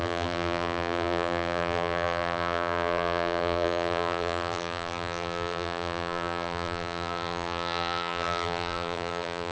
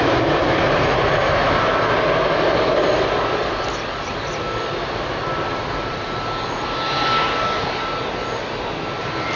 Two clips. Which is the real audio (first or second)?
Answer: second